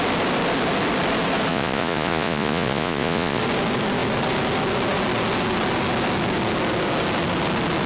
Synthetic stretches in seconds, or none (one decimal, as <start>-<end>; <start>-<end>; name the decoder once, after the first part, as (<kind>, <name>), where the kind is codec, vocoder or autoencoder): 1.5-3.4 (vocoder, Vocos)